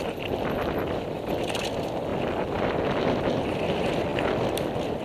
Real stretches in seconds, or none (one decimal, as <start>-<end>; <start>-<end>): 0.0-5.0